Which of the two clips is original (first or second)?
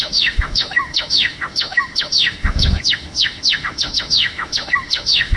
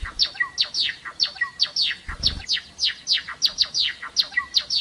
second